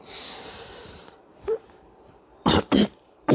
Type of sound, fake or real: fake